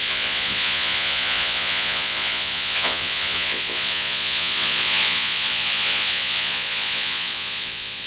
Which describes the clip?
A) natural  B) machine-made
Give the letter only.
B